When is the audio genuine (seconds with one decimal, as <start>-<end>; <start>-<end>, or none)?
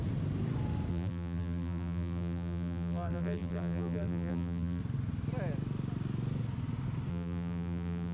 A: 0.0-0.9; 4.8-7.1